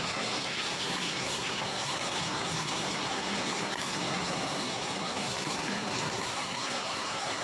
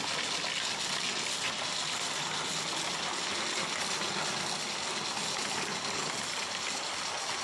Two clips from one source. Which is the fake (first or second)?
first